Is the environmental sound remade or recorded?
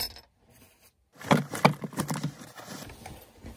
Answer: recorded